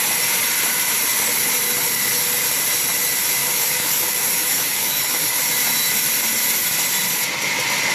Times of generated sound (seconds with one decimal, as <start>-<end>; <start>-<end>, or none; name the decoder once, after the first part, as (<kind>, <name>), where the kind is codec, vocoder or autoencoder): 3.4-5.4 (codec, DAC)

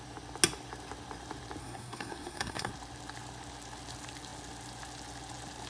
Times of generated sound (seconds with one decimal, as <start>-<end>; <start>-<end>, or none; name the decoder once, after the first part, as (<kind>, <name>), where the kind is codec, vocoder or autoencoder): 1.6-2.7 (codec, SNAC)

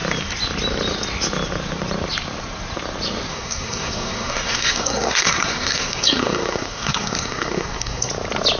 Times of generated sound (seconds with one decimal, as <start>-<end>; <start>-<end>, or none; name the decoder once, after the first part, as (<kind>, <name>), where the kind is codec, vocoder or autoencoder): 3.3-8.1 (codec, SNAC)

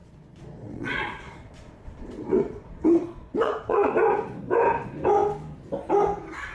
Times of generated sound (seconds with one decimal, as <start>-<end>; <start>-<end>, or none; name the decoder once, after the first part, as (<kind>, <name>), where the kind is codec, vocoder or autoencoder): 0.0-3.9 (vocoder, Vocos)

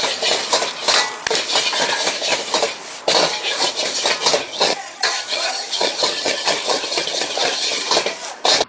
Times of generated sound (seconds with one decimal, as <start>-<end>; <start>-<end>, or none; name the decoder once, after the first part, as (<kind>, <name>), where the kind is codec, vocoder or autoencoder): 4.5-7.9 (vocoder, HiFi-GAN)

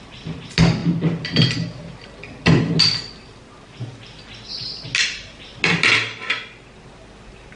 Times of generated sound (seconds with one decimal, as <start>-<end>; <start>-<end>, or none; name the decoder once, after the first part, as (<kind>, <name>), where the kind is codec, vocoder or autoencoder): none